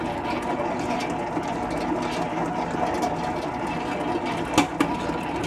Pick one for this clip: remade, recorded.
recorded